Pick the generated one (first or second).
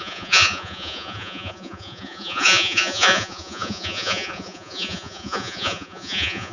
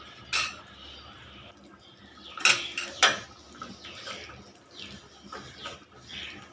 first